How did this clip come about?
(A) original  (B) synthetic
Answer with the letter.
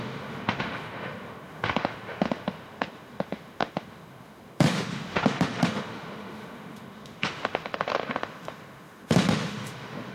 B